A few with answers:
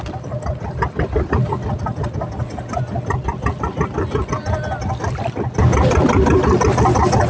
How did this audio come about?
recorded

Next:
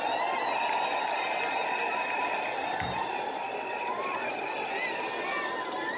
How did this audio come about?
recorded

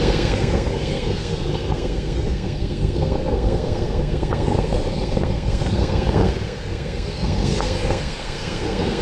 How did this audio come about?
remade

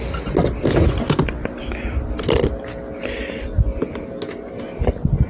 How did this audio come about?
recorded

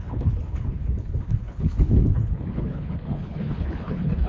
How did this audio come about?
remade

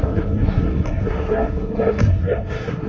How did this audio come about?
remade